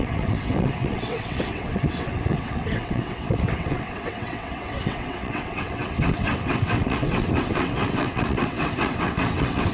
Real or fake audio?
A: fake